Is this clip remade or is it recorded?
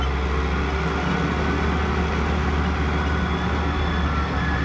recorded